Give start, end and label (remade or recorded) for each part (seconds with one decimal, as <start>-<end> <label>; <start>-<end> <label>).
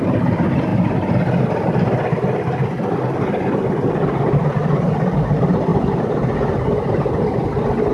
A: 0.0-7.9 recorded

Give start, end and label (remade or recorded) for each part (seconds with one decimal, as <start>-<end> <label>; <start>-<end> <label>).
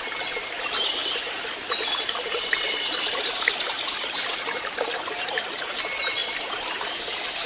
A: 0.0-1.0 recorded; 1.0-5.5 remade; 5.5-6.2 recorded; 6.2-7.5 remade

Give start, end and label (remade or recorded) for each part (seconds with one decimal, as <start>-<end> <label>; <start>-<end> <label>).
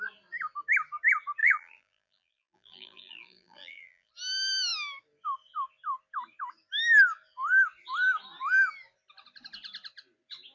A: 0.0-1.4 recorded; 1.4-4.1 remade; 4.1-10.5 recorded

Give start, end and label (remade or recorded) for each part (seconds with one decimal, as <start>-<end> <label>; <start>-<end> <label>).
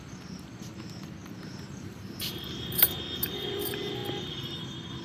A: 0.0-1.2 recorded; 1.2-3.6 remade; 3.6-5.0 recorded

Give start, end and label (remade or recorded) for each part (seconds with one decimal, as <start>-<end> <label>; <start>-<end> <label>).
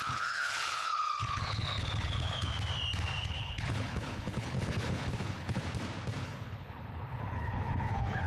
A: 0.0-2.5 remade; 2.5-3.2 recorded; 3.2-5.6 remade; 5.6-6.2 recorded; 6.2-8.3 remade